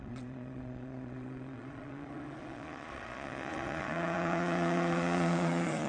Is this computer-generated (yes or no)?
yes